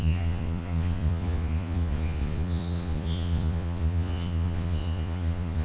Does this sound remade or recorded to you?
remade